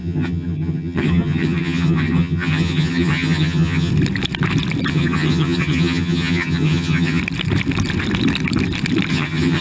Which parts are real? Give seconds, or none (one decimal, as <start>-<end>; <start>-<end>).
3.9-4.9; 7.2-9.1